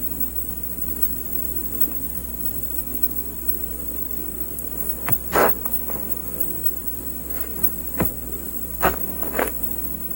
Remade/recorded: remade